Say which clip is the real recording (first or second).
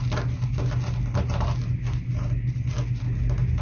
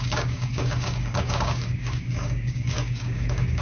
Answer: first